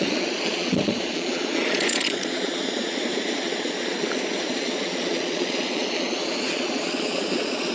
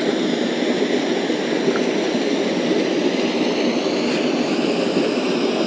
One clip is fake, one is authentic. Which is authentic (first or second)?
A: second